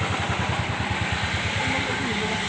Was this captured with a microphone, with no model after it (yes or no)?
yes